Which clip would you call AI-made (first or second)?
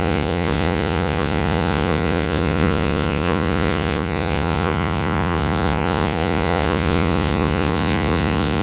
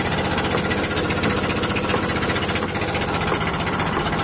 first